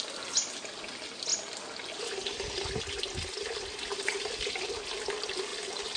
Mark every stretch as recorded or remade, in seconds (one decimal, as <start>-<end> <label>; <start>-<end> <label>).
0.0-6.0 recorded